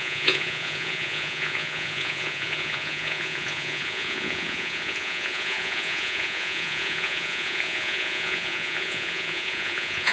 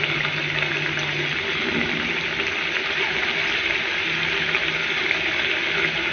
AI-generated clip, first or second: first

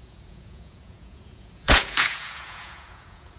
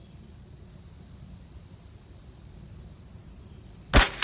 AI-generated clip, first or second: first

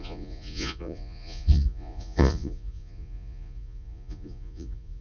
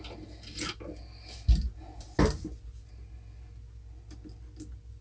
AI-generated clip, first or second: first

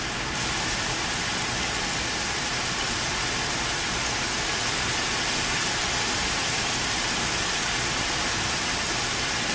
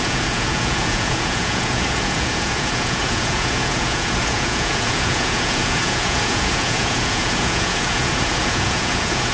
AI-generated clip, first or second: second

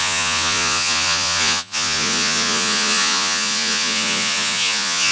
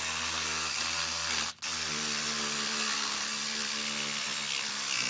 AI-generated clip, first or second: first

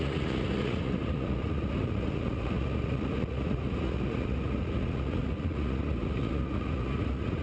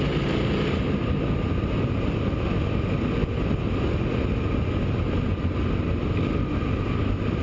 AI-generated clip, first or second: first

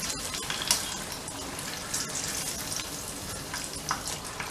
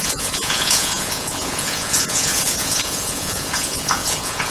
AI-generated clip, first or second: second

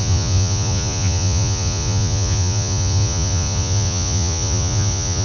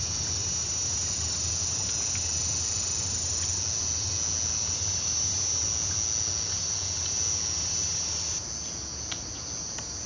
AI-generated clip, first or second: first